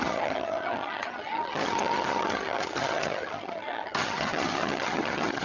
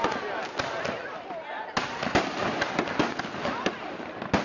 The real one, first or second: second